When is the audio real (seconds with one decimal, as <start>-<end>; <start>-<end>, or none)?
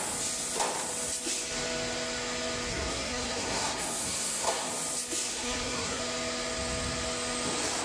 0.0-2.7; 4.7-5.3; 6.0-7.8